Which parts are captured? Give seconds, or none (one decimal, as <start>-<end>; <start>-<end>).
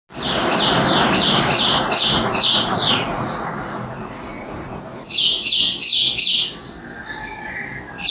0.0-1.7; 5.5-8.1